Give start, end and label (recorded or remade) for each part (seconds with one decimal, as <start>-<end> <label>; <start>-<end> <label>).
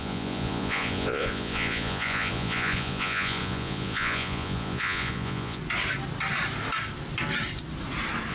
0.0-5.6 remade; 5.6-8.3 recorded